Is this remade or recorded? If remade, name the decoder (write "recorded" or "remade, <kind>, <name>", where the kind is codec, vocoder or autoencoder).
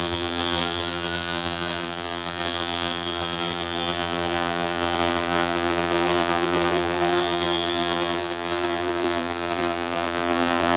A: remade, vocoder, BigVGAN v2